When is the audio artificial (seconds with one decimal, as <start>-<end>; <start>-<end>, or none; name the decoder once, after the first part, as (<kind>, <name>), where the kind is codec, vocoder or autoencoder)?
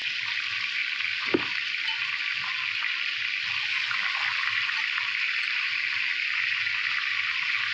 none